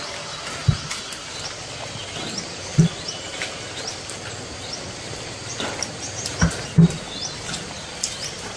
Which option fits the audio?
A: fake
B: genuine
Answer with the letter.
B